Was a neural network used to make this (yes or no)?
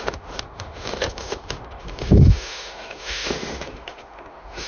yes